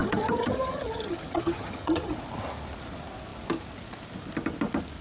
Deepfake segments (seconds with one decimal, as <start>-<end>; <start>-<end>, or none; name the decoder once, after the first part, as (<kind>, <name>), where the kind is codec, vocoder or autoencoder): 0.0-2.1 (vocoder, HiFi-GAN)